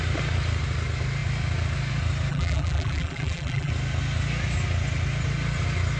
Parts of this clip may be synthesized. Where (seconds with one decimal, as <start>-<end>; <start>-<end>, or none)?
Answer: 2.3-3.7